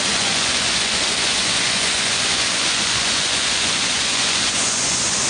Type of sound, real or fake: fake